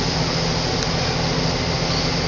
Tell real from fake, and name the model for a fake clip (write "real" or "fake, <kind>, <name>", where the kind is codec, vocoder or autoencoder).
real